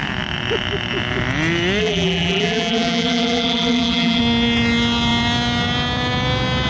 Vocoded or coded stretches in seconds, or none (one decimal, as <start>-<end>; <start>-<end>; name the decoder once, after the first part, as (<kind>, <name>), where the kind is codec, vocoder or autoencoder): 1.8-4.2 (vocoder, BigVGAN v2)

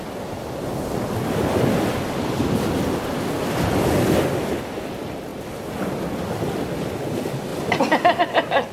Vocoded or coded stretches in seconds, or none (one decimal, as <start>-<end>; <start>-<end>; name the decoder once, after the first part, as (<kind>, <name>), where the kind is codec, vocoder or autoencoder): none